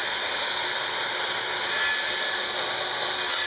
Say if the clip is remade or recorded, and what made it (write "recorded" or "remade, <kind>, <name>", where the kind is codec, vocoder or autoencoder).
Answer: recorded